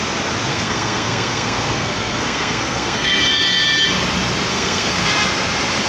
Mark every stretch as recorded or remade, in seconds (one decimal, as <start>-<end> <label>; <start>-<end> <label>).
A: 0.0-0.5 recorded; 0.5-3.2 remade; 3.2-4.5 recorded; 4.5-5.1 remade; 5.1-5.9 recorded